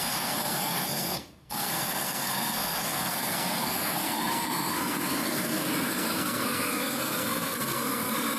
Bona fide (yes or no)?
no